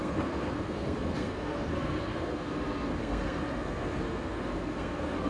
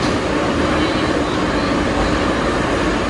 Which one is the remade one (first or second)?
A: first